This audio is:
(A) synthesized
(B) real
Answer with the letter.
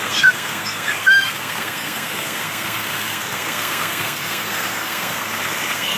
A